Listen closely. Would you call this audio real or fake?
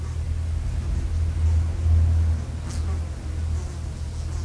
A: real